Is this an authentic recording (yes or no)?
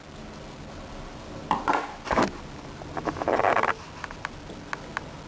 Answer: yes